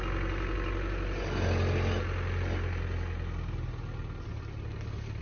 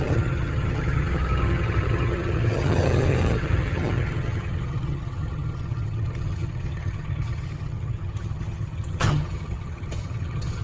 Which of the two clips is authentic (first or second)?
first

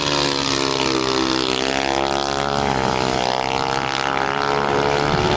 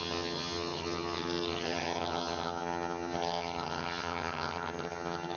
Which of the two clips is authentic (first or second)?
first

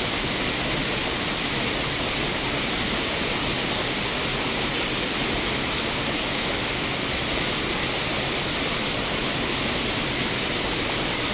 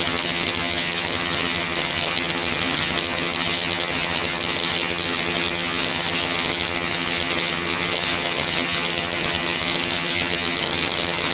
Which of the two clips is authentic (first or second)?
first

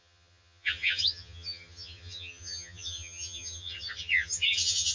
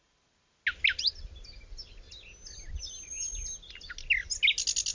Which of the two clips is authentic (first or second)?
second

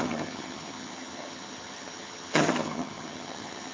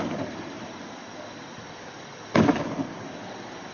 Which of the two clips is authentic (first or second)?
second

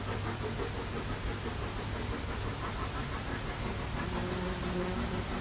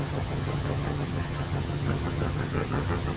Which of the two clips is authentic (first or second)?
first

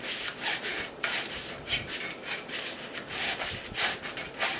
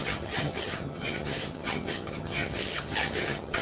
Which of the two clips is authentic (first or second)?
first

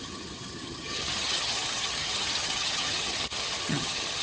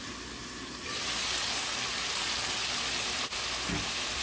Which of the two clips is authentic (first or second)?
second